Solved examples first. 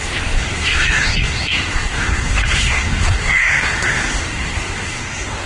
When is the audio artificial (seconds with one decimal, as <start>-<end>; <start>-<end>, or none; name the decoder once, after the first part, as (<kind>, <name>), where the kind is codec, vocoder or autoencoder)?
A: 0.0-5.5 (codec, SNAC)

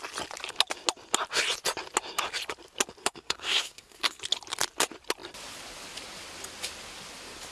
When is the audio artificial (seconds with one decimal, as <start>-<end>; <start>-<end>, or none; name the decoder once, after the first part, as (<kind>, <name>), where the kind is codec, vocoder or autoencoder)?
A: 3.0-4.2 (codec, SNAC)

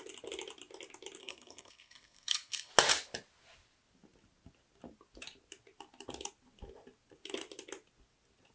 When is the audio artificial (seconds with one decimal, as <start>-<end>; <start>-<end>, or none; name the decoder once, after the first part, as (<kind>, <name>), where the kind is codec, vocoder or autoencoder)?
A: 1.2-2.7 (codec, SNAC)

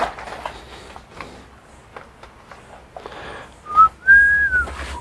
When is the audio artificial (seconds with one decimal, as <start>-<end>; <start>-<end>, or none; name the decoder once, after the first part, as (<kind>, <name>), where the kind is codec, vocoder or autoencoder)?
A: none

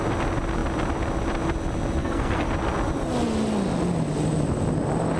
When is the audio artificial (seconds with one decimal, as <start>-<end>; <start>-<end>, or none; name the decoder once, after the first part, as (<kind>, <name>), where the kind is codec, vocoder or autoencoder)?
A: 2.0-2.5 (codec, SNAC)

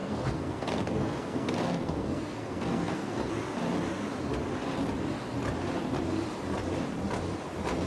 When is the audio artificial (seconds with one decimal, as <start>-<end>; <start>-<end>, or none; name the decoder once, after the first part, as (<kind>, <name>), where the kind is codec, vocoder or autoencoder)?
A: 0.0-3.3 (codec, SNAC)